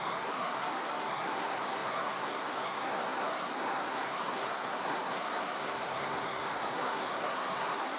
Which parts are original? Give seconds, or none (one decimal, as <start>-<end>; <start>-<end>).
none